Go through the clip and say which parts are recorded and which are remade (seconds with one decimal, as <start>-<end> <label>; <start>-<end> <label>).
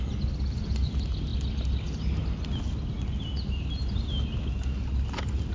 0.0-5.5 recorded